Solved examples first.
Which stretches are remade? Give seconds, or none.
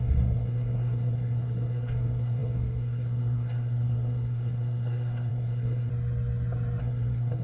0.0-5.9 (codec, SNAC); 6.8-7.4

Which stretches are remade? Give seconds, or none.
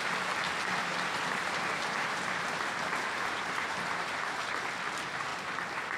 0.9-4.5 (vocoder, BigVGAN v2)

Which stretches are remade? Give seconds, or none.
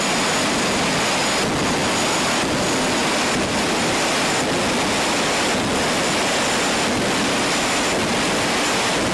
3.0-4.5 (vocoder, BigVGAN v2)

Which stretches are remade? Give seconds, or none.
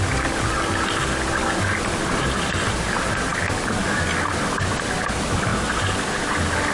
none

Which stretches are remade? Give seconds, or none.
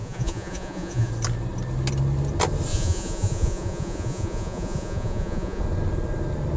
0.0-1.1 (vocoder, Vocos); 2.7-5.6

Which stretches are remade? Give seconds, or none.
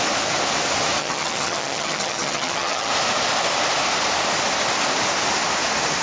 1.0-2.9 (vocoder, HiFi-GAN)